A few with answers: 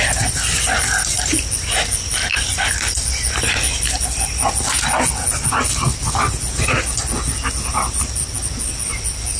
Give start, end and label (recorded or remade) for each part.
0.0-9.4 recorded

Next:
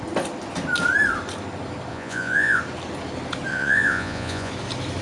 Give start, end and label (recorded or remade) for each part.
0.0-1.9 recorded; 1.9-2.6 remade; 2.6-3.5 recorded; 3.5-4.5 remade; 4.5-5.0 recorded

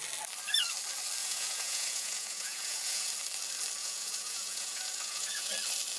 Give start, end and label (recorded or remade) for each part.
0.0-1.2 recorded; 1.2-3.1 remade; 3.1-3.8 recorded; 3.8-5.5 remade; 5.5-6.0 recorded

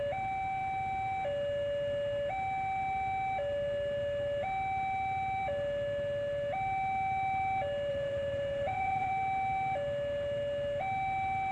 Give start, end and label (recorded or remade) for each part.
0.0-7.9 recorded; 7.9-9.1 remade; 9.1-11.5 recorded

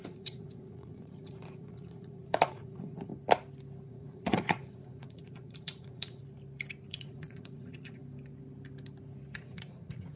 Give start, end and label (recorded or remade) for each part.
0.0-3.1 remade; 3.1-3.9 recorded; 3.9-6.2 remade; 6.2-6.9 recorded; 6.9-8.0 remade; 8.0-9.4 recorded; 9.4-10.2 remade

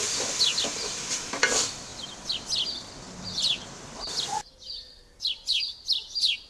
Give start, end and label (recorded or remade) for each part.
0.0-6.5 recorded